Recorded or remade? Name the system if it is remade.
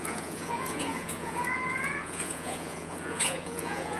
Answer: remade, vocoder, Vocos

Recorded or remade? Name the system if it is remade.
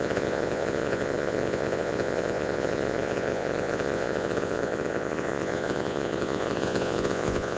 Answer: remade, vocoder, Vocos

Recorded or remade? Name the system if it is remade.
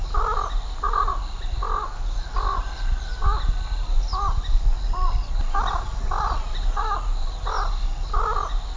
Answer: recorded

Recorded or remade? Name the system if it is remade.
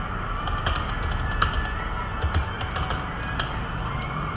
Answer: recorded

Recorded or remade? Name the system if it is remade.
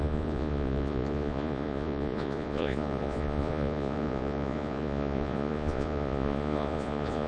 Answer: remade, vocoder, Vocos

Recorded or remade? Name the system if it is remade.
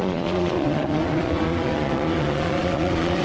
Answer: remade, vocoder, Vocos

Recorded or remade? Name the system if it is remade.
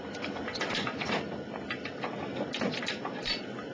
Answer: recorded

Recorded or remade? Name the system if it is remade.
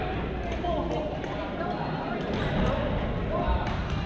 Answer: recorded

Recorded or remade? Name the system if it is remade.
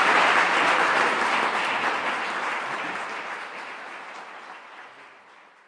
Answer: recorded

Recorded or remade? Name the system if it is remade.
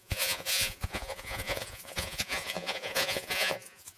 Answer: remade, vocoder, Vocos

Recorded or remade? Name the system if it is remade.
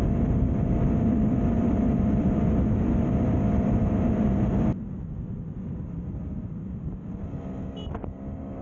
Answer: recorded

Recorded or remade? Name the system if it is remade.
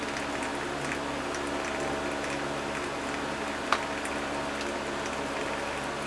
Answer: recorded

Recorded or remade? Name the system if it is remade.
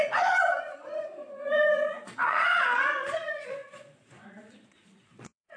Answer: remade, vocoder, Vocos